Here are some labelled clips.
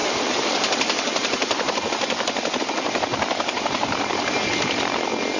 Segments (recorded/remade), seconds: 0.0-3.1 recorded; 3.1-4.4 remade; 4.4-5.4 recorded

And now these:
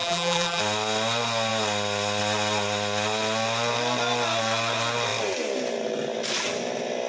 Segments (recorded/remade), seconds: 0.0-0.6 remade; 0.6-7.1 recorded

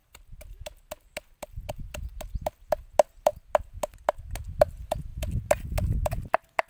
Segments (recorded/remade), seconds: 0.0-6.7 recorded